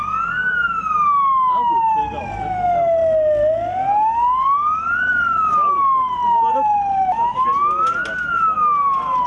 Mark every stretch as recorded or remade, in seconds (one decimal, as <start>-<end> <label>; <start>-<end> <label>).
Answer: 0.0-9.3 recorded

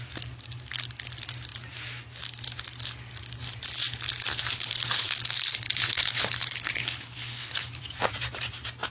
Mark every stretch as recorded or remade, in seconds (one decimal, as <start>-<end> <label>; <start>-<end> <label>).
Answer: 0.0-4.4 recorded; 4.4-7.8 remade; 7.8-8.9 recorded

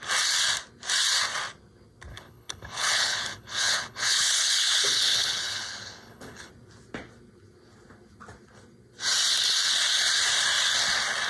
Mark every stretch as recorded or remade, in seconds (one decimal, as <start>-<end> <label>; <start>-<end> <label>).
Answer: 0.0-2.1 recorded; 2.1-6.5 remade; 6.5-11.3 recorded